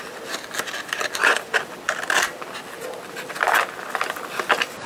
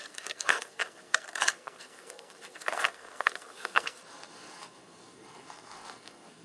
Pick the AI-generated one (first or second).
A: second